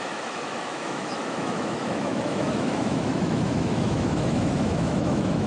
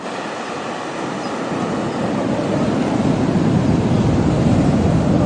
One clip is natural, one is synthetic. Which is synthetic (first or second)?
first